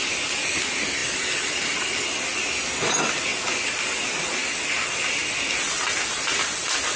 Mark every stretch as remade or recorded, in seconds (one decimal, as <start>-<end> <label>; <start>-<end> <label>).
0.0-3.3 recorded; 3.3-4.0 remade; 4.0-7.0 recorded